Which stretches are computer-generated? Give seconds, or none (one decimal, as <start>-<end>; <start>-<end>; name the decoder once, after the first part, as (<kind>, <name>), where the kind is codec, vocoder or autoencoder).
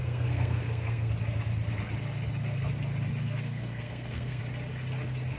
0.0-1.1 (codec, SNAC); 3.2-4.4